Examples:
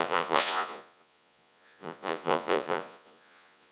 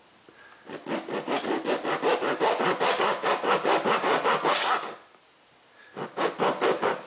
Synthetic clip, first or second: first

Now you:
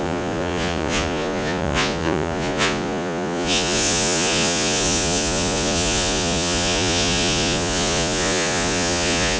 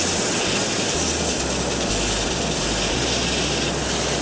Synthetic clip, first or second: first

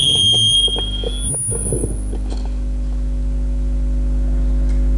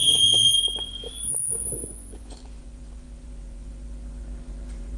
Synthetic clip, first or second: second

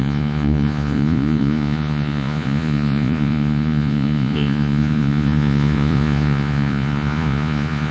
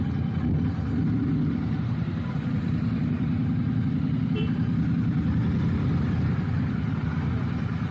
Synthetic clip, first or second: first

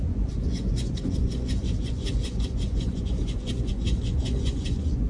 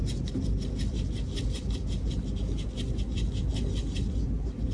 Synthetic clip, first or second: first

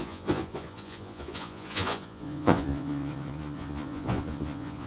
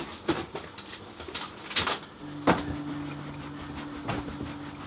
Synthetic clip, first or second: first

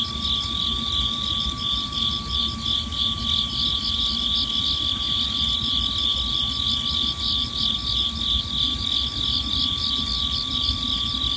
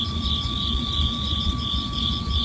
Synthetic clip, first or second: second